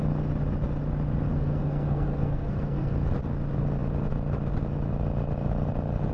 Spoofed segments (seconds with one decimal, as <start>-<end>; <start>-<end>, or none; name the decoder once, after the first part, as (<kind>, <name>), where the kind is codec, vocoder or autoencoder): 1.3-2.9 (codec, SNAC)